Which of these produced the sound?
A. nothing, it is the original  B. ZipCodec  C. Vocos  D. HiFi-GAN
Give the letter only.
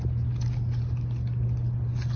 A